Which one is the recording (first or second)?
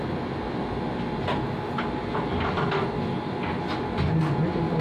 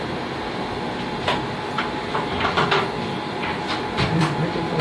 first